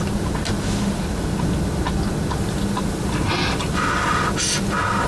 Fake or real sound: real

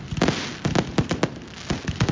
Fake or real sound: real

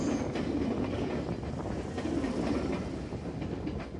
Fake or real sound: real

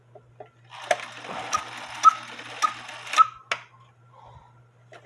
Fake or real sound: real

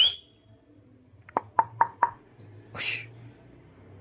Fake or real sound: real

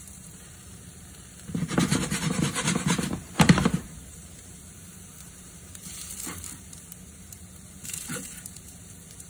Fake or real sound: fake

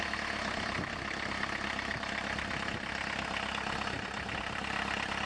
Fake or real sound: real